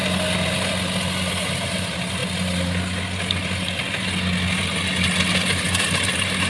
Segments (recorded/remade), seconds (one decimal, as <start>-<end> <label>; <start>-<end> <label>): 0.0-1.3 recorded; 1.3-2.2 remade; 2.2-6.1 recorded; 6.1-6.5 remade